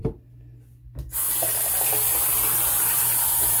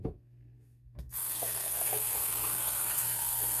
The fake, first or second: second